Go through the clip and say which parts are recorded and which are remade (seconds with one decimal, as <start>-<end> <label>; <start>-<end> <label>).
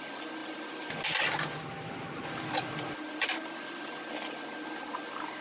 0.0-5.4 recorded